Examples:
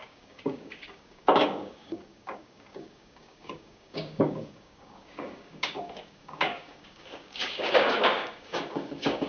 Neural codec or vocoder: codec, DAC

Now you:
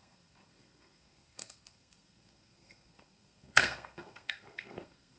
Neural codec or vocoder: codec, SNAC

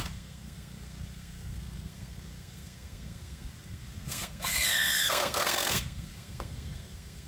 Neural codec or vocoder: codec, SNAC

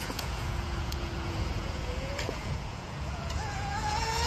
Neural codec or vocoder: vocoder, Vocos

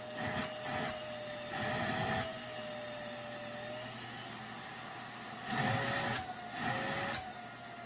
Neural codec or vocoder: none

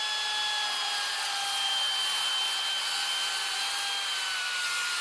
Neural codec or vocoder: none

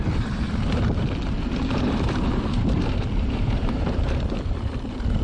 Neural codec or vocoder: vocoder, BigVGAN v2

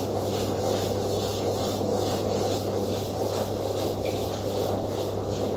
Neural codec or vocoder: none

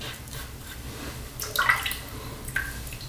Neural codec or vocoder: none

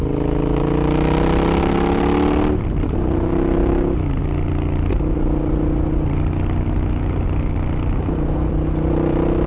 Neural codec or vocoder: none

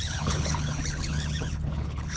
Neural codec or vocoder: codec, HILCodec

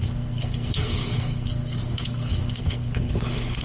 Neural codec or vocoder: codec, SNAC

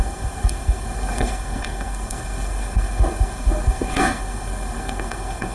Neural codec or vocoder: codec, SNAC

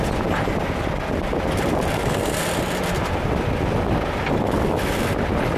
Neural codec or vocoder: none